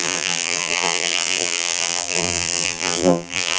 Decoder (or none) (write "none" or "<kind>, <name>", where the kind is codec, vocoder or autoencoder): vocoder, BigVGAN v2